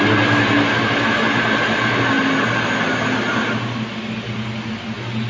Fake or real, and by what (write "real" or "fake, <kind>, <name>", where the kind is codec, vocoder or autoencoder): real